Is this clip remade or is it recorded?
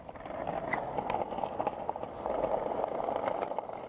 recorded